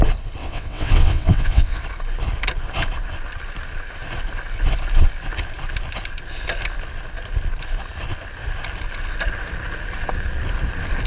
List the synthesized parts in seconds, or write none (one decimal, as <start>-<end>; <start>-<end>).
0.4-1.8